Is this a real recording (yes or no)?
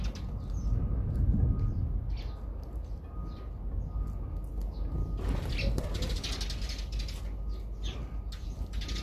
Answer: yes